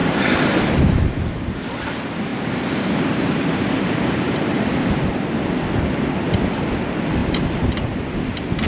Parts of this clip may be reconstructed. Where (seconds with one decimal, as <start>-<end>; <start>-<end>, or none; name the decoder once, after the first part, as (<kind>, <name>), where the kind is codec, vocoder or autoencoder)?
0.0-1.0 (vocoder, BigVGAN v2); 2.3-4.4; 7.2-7.7